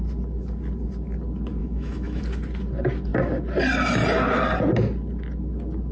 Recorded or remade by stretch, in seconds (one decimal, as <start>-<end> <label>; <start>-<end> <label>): 0.0-1.6 recorded; 1.6-2.2 remade; 2.2-5.9 recorded